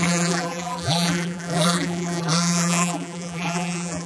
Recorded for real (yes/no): no